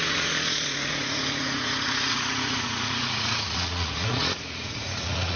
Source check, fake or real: fake